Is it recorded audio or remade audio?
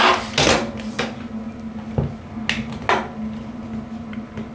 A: recorded